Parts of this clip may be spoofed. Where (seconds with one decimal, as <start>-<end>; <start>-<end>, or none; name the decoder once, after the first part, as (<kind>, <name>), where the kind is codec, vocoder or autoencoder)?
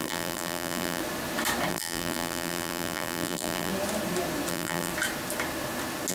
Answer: 0.0-1.0 (vocoder, BigVGAN v2); 1.7-3.7; 4.5-4.9